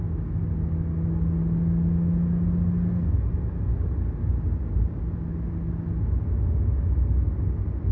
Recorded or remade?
recorded